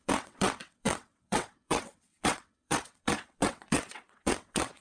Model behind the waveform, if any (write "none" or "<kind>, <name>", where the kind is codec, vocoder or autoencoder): vocoder, WaveNeXt